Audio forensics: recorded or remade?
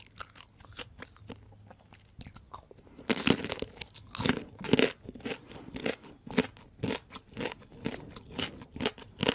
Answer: recorded